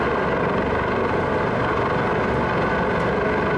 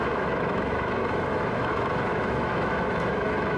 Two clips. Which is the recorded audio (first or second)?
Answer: first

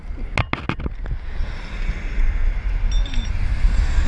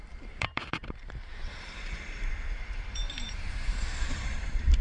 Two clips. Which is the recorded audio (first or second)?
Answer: first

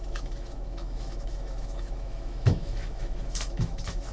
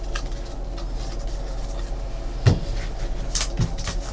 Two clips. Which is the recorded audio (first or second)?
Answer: second